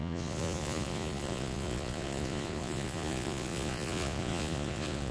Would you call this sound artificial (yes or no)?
yes